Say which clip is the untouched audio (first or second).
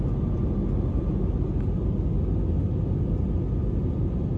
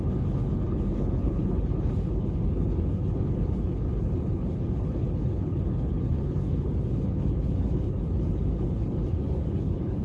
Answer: first